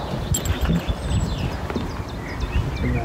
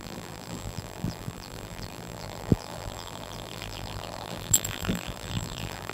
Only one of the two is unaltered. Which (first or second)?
first